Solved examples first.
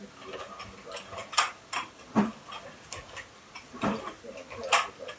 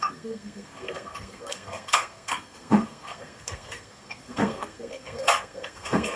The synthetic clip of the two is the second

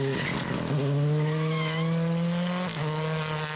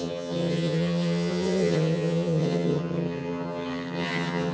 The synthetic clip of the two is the second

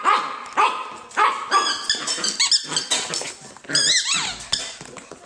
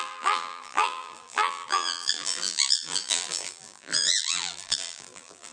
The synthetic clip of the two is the second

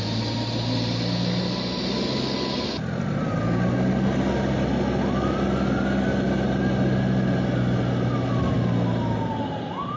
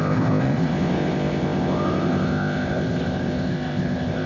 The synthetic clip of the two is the second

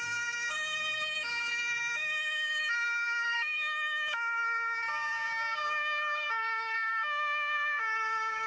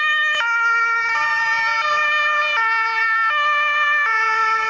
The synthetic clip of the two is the first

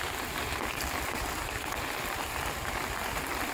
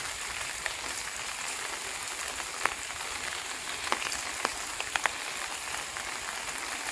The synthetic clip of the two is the first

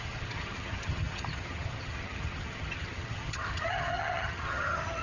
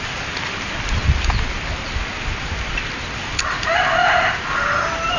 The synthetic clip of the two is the first